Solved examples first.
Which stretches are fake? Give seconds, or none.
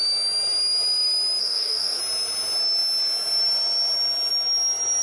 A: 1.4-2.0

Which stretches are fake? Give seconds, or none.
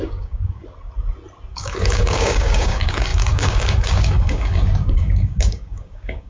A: 0.0-0.6; 1.5-6.3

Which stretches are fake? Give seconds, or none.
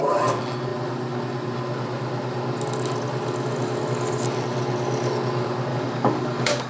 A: 5.7-6.7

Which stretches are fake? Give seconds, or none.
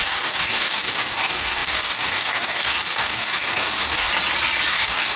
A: 0.0-4.1; 4.7-5.2